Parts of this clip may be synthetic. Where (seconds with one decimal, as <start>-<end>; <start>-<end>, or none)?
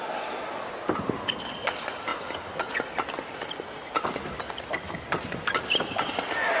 none